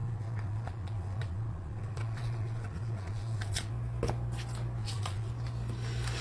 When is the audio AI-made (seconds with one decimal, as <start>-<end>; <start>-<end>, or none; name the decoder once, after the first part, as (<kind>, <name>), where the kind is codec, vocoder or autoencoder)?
0.0-3.7 (vocoder, Vocos); 4.8-5.3

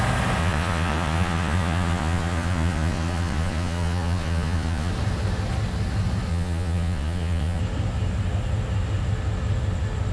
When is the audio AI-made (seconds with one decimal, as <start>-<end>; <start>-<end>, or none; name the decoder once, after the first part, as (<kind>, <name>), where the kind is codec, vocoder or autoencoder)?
0.4-4.9 (vocoder, Vocos); 6.3-7.6

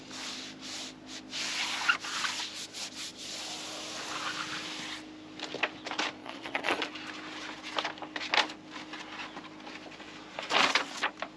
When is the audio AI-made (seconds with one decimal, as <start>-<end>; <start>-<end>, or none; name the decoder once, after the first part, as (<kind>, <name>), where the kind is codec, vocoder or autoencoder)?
6.2-6.9 (vocoder, Vocos)

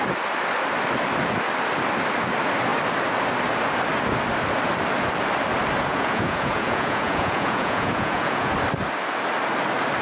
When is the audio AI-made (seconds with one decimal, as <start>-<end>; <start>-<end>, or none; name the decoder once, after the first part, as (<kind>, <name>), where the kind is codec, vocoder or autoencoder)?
5.9-8.5 (vocoder, Vocos)